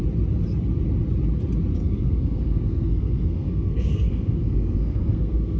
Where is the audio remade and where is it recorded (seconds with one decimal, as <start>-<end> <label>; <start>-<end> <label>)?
0.0-1.8 recorded; 1.8-5.6 remade